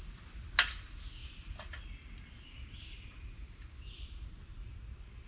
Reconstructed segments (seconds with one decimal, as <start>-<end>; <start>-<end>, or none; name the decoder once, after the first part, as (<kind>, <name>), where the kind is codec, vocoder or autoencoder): none